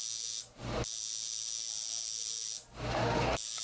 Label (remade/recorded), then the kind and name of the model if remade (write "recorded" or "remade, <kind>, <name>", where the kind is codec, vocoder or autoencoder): recorded